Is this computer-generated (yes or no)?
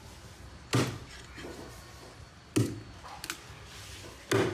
no